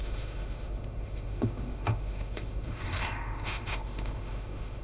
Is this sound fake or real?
fake